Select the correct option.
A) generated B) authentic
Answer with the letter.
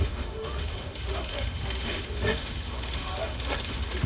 A